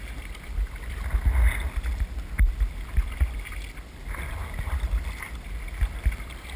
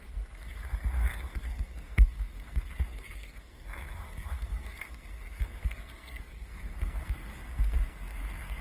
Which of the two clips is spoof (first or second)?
second